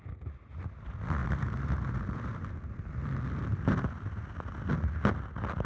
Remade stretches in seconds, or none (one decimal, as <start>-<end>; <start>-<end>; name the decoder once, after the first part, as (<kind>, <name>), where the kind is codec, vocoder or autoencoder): 1.2-2.6 (vocoder, BigVGAN v2)